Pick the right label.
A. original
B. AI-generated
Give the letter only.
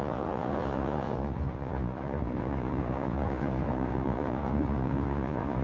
B